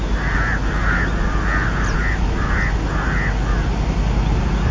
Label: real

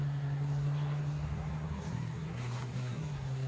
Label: fake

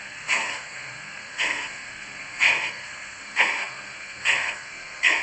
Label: fake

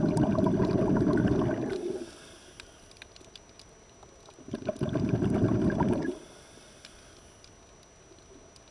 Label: real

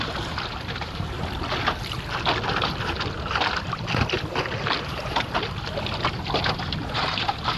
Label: real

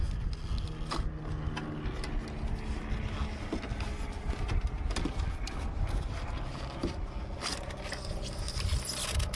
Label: real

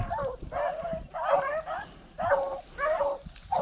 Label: real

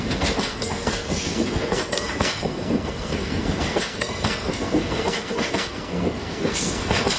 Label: fake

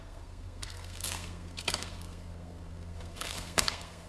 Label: fake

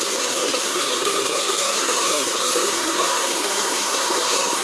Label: fake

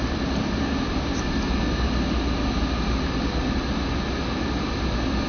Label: real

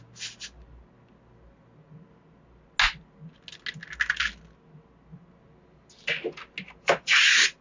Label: real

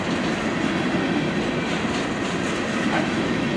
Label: real